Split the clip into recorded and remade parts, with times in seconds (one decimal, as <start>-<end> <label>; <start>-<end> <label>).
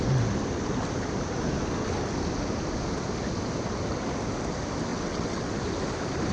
0.0-4.9 recorded; 4.9-5.5 remade; 5.5-6.3 recorded